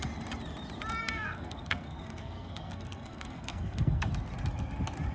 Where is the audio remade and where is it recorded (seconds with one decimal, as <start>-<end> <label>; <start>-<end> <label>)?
0.0-1.0 recorded; 1.0-4.1 remade; 4.1-5.1 recorded